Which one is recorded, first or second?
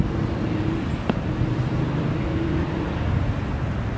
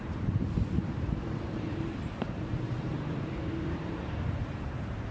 first